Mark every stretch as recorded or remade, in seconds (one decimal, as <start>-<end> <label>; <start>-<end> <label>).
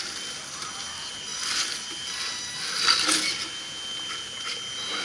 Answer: 0.0-5.0 recorded